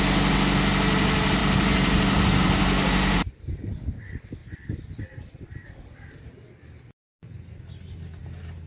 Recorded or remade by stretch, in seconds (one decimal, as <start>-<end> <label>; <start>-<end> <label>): 0.0-1.4 recorded; 1.4-4.0 remade; 4.0-8.7 recorded

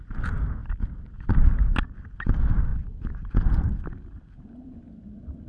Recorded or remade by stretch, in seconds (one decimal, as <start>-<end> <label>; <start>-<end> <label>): 0.0-2.7 recorded; 2.7-5.5 remade

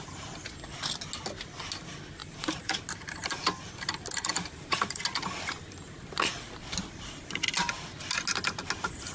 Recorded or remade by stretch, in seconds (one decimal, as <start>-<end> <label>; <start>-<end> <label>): 0.0-2.2 recorded; 2.2-2.8 remade; 2.8-4.3 recorded; 4.3-5.0 remade; 5.0-9.1 recorded

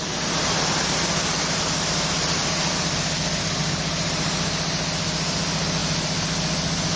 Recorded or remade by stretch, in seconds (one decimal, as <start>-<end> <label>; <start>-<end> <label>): 0.0-2.4 recorded; 2.4-3.4 remade; 3.4-7.0 recorded

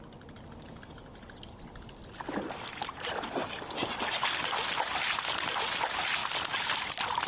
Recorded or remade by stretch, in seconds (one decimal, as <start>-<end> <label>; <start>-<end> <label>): 0.0-7.3 recorded

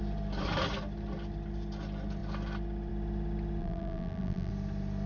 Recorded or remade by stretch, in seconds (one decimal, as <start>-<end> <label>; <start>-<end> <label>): 0.0-3.6 recorded; 3.6-4.5 remade; 4.5-5.1 recorded